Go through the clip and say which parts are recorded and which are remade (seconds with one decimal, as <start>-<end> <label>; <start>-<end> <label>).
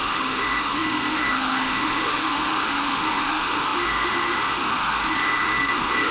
0.0-6.1 remade